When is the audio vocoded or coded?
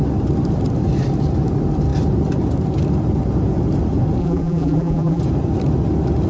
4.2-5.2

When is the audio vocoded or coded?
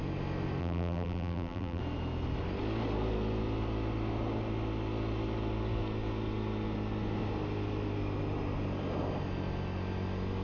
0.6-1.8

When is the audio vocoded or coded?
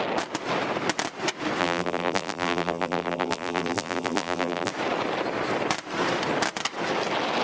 1.6-4.7